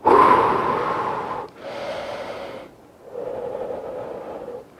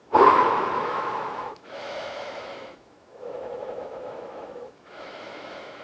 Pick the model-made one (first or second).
second